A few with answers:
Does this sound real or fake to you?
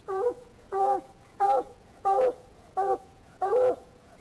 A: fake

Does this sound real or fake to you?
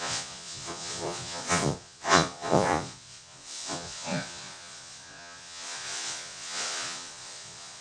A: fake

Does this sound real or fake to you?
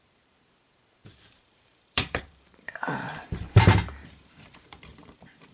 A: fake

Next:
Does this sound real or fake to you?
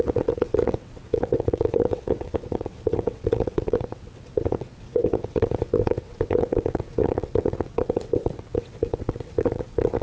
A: fake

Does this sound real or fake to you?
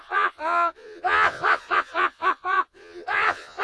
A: fake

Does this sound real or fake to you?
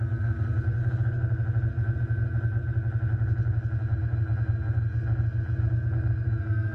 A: real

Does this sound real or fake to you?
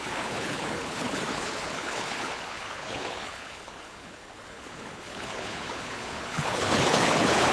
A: fake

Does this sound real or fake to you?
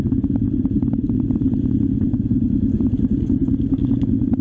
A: real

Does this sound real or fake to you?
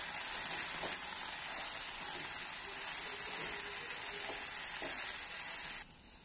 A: real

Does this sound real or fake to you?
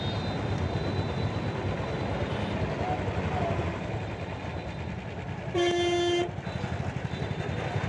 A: real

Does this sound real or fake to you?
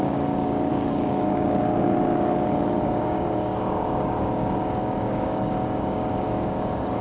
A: fake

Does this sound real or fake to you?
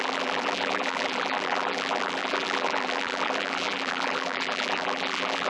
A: fake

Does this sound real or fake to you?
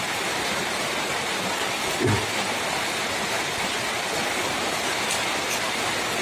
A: real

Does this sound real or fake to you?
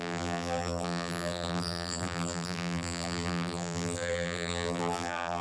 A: fake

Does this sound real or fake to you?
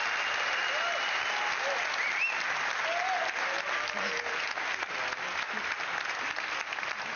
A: real